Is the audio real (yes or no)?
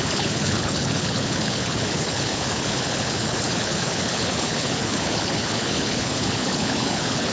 no